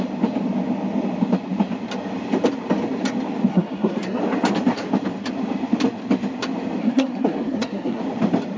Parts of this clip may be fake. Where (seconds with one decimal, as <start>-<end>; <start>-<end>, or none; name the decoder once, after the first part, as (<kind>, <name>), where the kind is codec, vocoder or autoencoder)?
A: 3.5-4.2 (codec, SNAC); 6.8-8.0